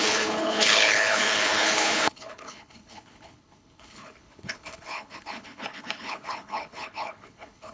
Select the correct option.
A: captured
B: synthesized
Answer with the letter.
B